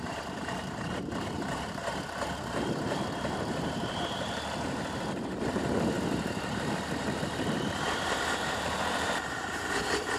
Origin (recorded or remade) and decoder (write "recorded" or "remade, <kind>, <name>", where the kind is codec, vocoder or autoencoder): remade, vocoder, BigVGAN v2